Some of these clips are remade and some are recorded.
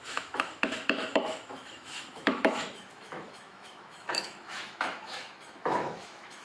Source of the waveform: remade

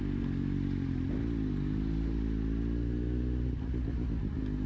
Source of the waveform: recorded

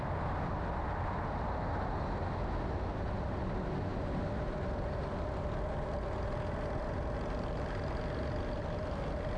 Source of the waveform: recorded